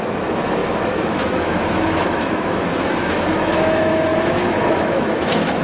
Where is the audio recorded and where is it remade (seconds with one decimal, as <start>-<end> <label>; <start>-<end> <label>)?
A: 0.0-5.6 remade